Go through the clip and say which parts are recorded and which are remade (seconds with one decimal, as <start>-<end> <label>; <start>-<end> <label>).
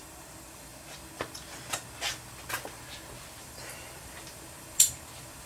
0.0-0.7 remade; 0.7-3.4 recorded; 3.4-5.5 remade